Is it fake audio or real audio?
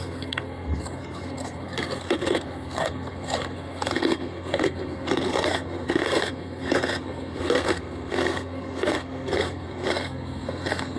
fake